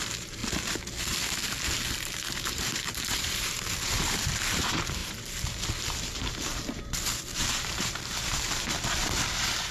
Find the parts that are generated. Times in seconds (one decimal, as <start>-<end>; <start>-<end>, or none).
0.0-0.4; 1.6-9.7